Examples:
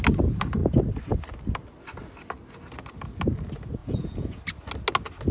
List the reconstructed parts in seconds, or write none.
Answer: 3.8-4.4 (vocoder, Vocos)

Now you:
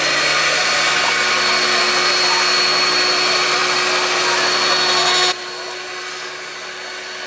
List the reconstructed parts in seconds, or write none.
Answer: none

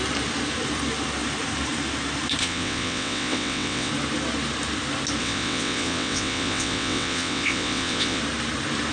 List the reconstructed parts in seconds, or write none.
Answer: 2.4-3.9 (vocoder, WaveNeXt); 5.2-8.2

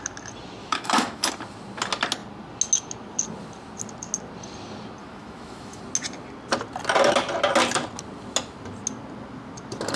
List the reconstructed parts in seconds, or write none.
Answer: 0.6-1.3 (autoencoder, DAC-VAE); 5.0-5.8

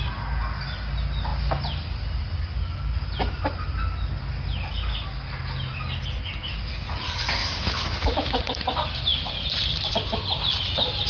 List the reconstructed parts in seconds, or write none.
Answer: 7.4-8.4 (autoencoder, DAC-VAE)

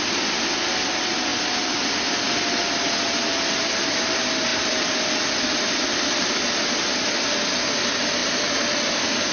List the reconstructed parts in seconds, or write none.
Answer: none

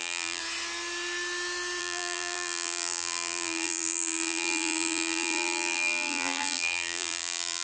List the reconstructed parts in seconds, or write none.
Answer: 0.0-0.4 (vocoder, BigVGAN v2); 1.8-7.6